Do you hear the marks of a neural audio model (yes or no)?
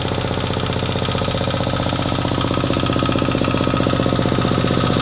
no